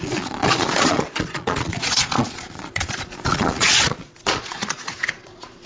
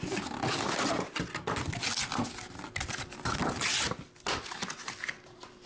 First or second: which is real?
second